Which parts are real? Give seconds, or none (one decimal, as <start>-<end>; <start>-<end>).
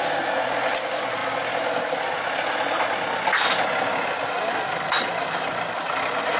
0.0-6.4